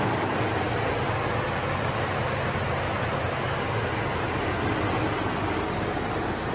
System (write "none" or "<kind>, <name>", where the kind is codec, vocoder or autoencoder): none